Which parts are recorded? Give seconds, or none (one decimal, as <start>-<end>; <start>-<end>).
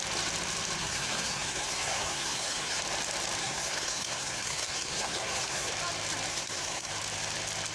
0.0-0.8; 2.8-3.4; 5.7-6.3; 6.9-7.7